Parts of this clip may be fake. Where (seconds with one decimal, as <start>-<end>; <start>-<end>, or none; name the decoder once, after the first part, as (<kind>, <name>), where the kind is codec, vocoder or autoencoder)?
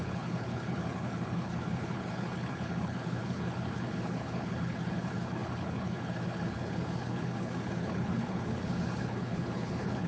0.0-10.1 (codec, HILCodec)